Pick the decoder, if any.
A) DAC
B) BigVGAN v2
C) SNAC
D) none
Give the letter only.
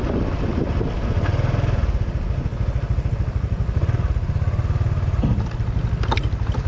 D